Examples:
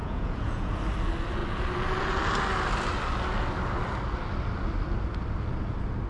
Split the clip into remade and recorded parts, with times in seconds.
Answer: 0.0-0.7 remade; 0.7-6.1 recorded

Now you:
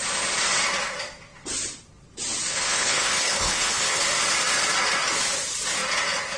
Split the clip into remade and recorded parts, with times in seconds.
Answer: 0.0-2.5 recorded; 2.5-4.0 remade; 4.0-6.4 recorded

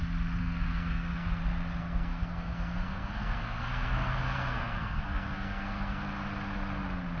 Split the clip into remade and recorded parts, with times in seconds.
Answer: 0.0-0.4 recorded; 0.4-1.4 remade; 1.4-1.8 recorded; 1.8-6.1 remade; 6.1-7.2 recorded

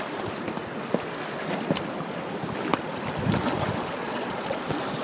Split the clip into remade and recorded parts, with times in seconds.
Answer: 0.0-4.0 recorded; 4.0-4.6 remade; 4.6-5.0 recorded